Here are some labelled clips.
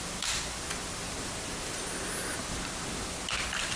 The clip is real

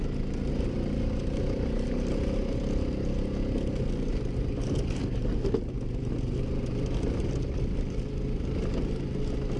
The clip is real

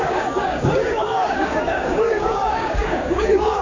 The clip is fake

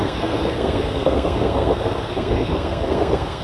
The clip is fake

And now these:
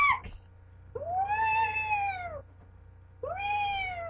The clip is real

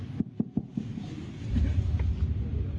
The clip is real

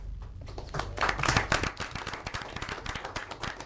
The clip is real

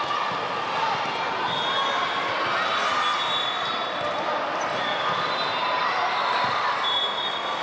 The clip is real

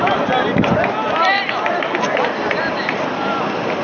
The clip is fake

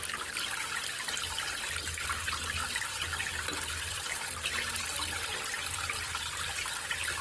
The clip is real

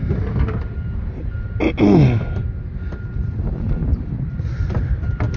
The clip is real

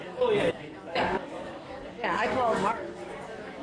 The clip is fake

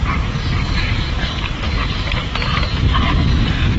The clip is real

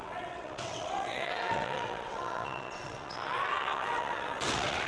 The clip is fake